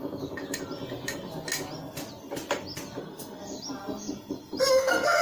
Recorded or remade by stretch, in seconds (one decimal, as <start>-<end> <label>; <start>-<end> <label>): 0.0-3.0 recorded; 3.0-3.4 remade; 3.4-4.7 recorded; 4.7-5.2 remade